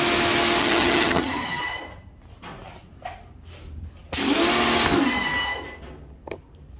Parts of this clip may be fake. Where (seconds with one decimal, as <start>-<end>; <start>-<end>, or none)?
0.6-1.6